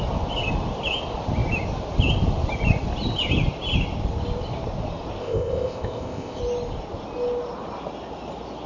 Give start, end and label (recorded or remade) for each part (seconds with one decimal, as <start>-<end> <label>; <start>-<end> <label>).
0.0-5.2 recorded; 5.2-6.4 remade; 6.4-8.7 recorded